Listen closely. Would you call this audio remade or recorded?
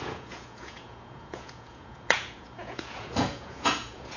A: remade